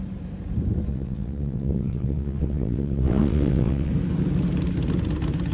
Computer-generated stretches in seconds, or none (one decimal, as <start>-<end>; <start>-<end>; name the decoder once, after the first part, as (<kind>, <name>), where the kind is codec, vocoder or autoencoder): 0.9-3.9 (vocoder, WaveNeXt)